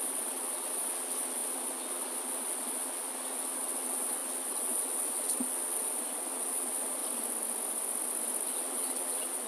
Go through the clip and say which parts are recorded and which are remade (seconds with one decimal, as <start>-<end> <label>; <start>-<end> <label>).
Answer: 0.0-7.0 remade; 7.0-8.5 recorded; 8.5-9.5 remade